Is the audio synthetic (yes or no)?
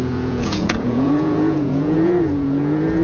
yes